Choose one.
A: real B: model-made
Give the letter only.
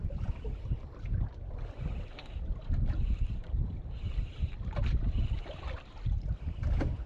A